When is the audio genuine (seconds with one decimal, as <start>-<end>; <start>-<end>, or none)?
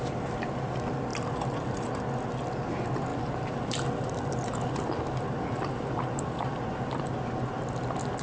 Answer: 0.0-1.1; 1.9-3.1; 6.6-8.2